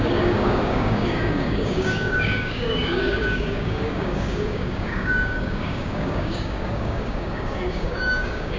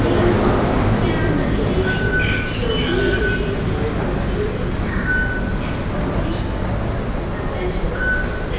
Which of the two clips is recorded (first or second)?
second